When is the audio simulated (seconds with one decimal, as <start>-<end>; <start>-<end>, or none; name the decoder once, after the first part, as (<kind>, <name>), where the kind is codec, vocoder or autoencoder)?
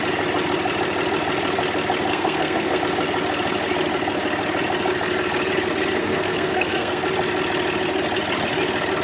2.1-2.8 (codec, SNAC); 6.0-7.0